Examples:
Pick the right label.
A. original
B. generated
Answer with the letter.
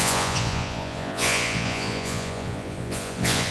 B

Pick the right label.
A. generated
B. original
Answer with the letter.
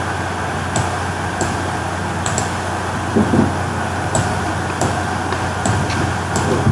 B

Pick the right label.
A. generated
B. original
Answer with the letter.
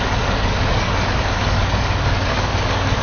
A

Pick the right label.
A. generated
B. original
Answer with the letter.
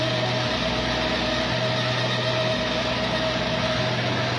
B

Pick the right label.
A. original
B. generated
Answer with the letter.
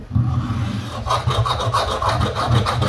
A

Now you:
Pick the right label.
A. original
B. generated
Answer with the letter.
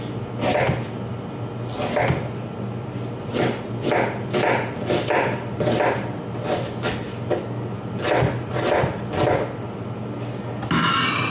A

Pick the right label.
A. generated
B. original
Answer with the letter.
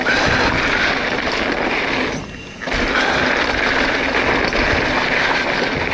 B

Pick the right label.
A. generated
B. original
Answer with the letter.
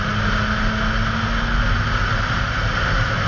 B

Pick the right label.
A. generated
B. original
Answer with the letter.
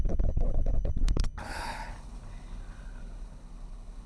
A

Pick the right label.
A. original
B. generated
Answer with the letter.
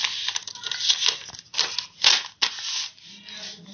A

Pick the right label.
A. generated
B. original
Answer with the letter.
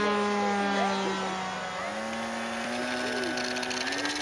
B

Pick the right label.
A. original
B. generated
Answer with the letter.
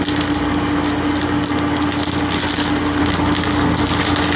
A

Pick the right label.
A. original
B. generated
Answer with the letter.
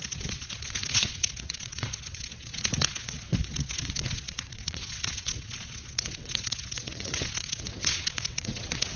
B